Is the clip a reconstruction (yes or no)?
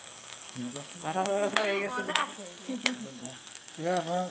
yes